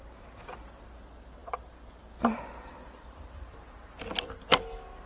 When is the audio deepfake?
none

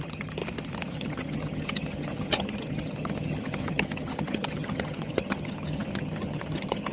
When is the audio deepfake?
0.0-0.4 (vocoder, HiFi-GAN); 0.9-6.9

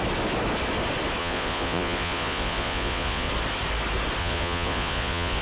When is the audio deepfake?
1.2-3.3 (vocoder, Vocos); 4.2-5.4

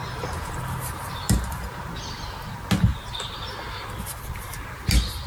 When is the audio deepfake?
none

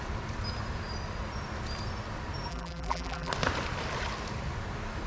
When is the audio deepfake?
2.5-3.3 (vocoder, BigVGAN v2)

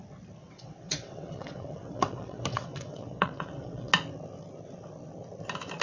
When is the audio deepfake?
0.4-3.9 (vocoder, WaveNeXt)

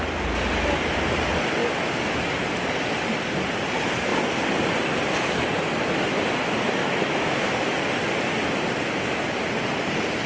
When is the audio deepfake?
6.8-7.5 (autoencoder, DAC-VAE)

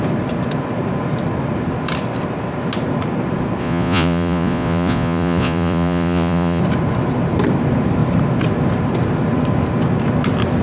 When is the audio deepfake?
3.6-6.6 (vocoder, Vocos)